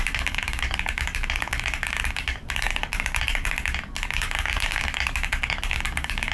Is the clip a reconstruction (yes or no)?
yes